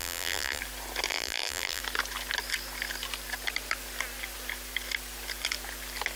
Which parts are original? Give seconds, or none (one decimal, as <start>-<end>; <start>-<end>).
0.6-1.1; 1.8-6.2